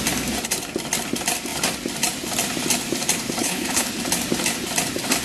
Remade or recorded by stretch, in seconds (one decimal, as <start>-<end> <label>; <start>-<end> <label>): 0.0-3.4 recorded; 3.4-3.9 remade; 3.9-5.2 recorded